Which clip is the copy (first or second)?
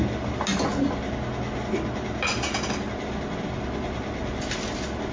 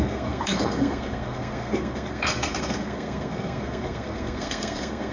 second